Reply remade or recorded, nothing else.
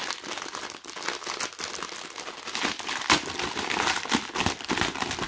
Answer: recorded